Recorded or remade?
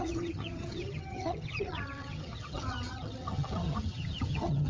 remade